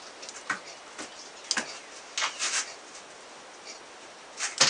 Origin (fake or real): real